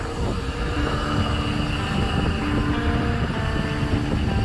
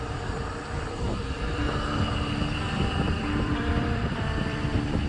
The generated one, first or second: second